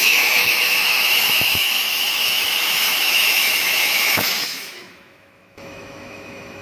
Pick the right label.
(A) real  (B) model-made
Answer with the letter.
B